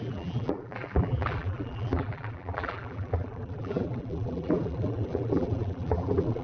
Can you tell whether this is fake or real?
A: fake